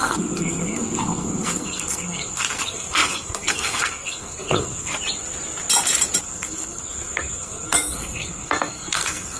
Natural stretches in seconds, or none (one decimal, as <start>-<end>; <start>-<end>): 4.9-6.2